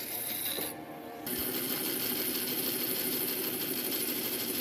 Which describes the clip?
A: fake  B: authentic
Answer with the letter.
B